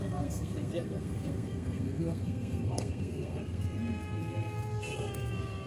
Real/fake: fake